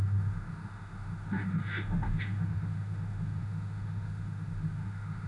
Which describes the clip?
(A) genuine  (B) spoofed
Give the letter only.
B